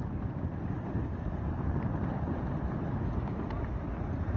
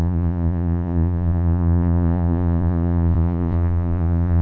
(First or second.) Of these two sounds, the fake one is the second